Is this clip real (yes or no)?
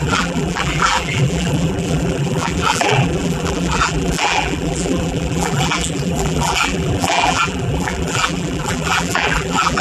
no